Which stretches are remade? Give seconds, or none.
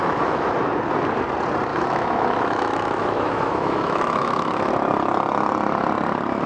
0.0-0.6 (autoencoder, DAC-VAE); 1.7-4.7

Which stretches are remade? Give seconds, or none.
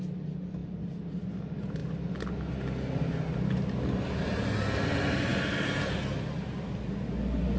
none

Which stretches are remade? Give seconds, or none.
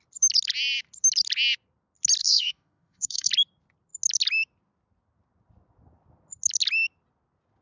2.2-3.3 (autoencoder, DAC-VAE)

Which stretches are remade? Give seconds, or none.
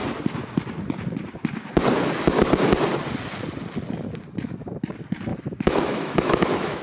5.3-6.8 (autoencoder, DAC-VAE)